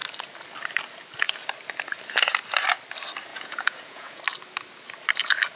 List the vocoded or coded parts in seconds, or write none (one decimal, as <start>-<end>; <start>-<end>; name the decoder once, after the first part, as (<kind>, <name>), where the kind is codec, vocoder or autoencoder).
3.3-4.2 (vocoder, Vocos)